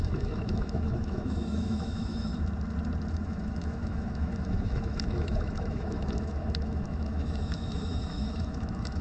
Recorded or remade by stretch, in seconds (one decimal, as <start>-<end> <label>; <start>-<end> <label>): 0.0-2.3 remade; 2.3-3.1 recorded; 3.1-9.0 remade